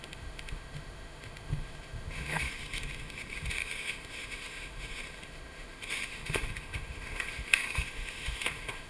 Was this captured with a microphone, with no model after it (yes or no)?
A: no